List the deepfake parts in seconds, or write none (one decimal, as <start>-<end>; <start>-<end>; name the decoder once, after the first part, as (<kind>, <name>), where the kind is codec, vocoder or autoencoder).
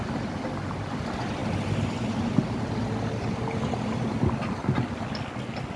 none